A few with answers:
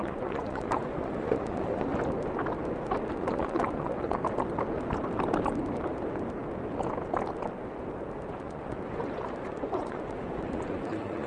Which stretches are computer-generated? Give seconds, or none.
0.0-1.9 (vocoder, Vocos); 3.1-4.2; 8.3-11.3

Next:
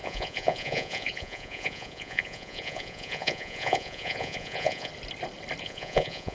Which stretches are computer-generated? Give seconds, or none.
0.0-4.9 (vocoder, Vocos); 5.6-6.3